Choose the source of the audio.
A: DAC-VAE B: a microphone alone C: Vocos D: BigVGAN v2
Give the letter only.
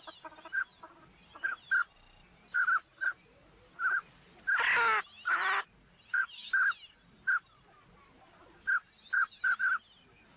B